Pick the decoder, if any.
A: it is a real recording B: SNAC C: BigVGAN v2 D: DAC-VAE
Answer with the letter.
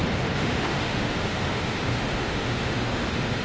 D